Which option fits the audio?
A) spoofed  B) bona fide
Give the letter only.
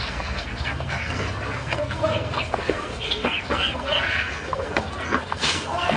A